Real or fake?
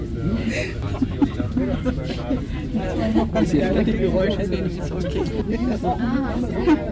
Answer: real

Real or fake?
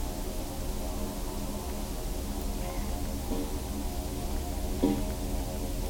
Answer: real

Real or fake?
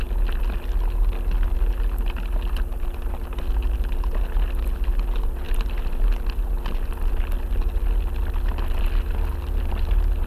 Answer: real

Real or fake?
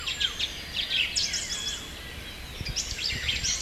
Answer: real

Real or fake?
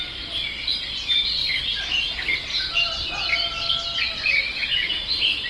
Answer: real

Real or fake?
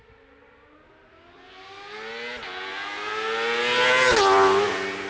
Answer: real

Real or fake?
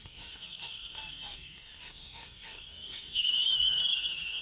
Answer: fake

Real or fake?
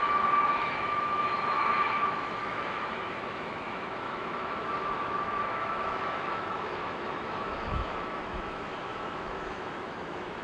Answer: fake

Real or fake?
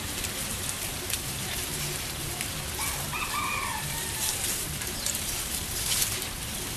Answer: fake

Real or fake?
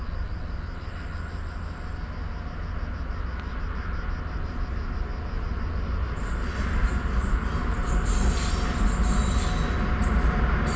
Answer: real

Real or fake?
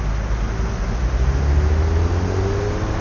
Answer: real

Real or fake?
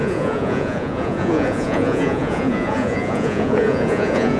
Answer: fake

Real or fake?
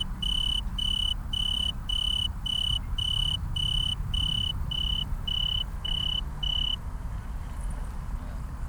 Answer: fake